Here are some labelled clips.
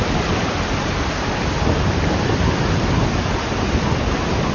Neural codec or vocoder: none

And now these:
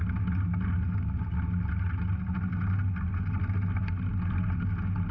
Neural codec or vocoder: none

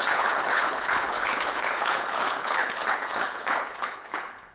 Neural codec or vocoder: codec, HILCodec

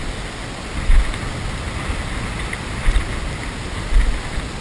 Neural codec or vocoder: none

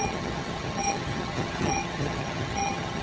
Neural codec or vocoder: vocoder, HiFi-GAN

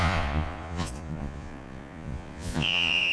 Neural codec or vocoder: vocoder, Vocos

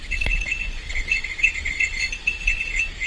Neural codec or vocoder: vocoder, Vocos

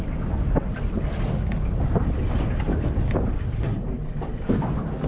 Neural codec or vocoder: none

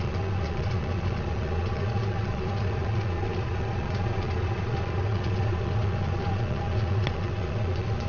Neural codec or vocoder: vocoder, Vocos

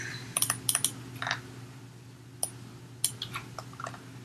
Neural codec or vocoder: none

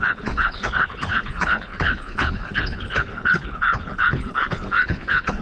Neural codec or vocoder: codec, HILCodec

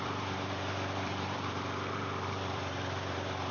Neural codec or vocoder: vocoder, BigVGAN v2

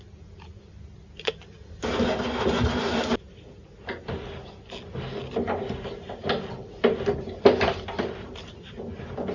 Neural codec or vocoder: none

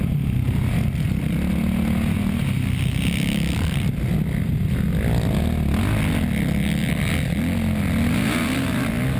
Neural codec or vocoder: none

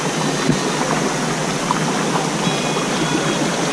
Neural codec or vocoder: none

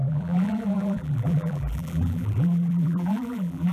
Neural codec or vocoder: vocoder, BigVGAN v2